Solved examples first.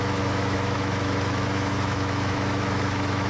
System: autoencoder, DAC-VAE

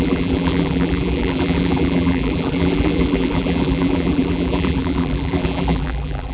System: vocoder, BigVGAN v2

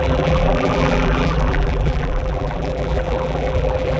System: vocoder, BigVGAN v2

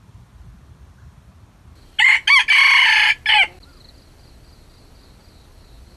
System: none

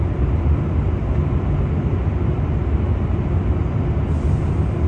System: none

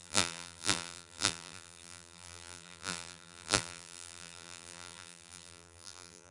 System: vocoder, BigVGAN v2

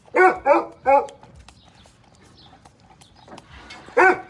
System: none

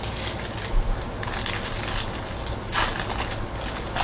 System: none